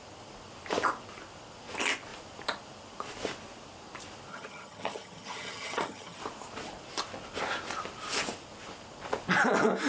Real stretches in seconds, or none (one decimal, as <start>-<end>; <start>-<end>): 0.0-4.3; 6.2-9.9